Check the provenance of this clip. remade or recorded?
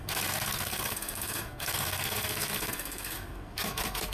remade